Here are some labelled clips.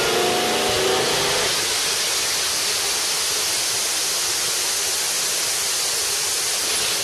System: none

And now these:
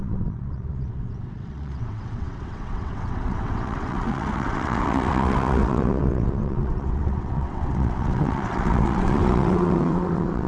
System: vocoder, WaveNeXt